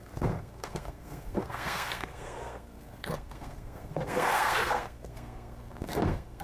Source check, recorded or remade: remade